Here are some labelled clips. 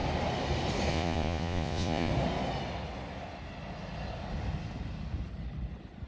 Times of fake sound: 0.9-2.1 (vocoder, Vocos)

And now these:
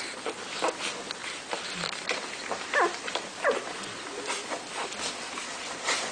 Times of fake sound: none

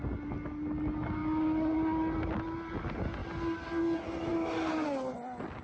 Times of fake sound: none

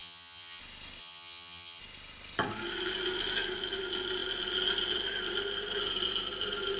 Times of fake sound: 0.0-0.6 (vocoder, HiFi-GAN); 1.0-1.8

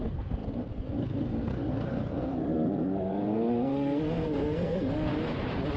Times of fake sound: 0.0-5.1 (codec, SNAC)

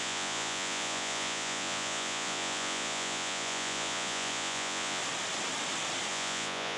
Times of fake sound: 0.0-5.0 (vocoder, Vocos); 6.1-6.8